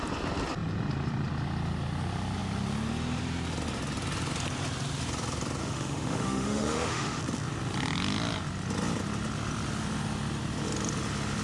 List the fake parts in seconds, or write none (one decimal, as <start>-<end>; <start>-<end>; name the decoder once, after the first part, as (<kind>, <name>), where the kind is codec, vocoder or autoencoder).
5.6-7.2 (autoencoder, DAC-VAE)